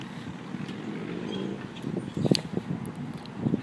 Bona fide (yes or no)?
yes